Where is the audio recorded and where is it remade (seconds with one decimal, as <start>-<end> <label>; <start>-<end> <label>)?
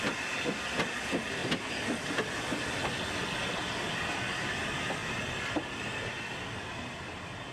0.0-7.5 recorded